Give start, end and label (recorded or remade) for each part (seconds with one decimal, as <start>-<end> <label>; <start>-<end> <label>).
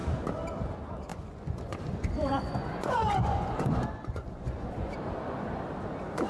0.0-1.1 recorded; 1.1-4.9 remade; 4.9-6.3 recorded